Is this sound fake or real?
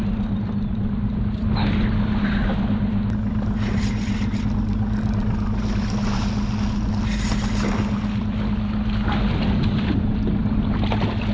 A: real